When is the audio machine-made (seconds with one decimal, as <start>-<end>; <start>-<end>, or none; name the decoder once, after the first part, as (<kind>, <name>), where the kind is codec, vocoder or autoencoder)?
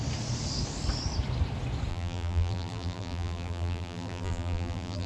1.9-5.1 (vocoder, BigVGAN v2)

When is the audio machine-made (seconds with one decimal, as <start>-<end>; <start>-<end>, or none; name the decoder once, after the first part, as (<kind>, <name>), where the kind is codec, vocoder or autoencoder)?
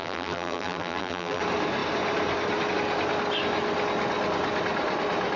0.0-1.4 (vocoder, BigVGAN v2)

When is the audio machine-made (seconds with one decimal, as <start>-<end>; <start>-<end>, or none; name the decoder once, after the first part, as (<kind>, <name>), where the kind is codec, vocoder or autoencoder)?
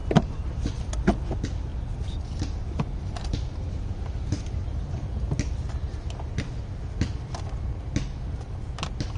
0.0-0.9 (vocoder, BigVGAN v2); 1.7-5.2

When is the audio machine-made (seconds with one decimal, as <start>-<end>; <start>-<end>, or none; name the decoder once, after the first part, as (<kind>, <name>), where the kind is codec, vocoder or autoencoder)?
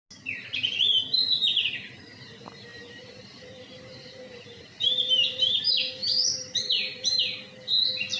2.7-5.6 (vocoder, BigVGAN v2); 6.0-7.2